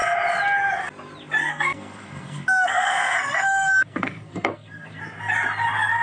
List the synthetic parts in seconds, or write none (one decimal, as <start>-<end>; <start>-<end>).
1.4-5.0